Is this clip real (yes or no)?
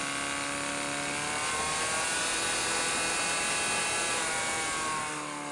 yes